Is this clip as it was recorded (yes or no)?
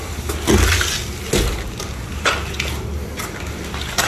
yes